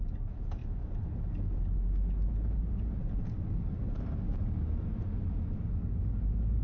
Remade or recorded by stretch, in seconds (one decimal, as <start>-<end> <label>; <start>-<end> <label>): 0.0-6.6 recorded